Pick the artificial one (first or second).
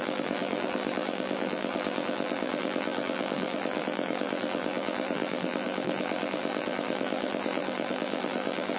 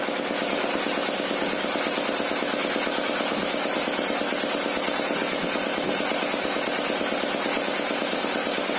first